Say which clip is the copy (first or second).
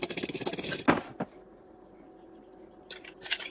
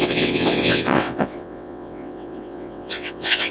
second